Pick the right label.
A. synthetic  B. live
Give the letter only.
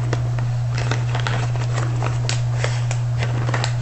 B